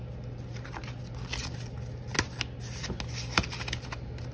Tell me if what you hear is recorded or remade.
recorded